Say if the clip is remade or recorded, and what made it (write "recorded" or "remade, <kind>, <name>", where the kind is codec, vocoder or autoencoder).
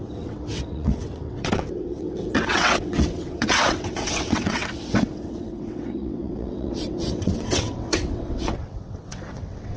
remade, vocoder, WaveNeXt